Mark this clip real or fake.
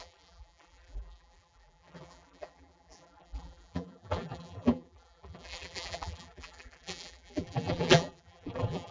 fake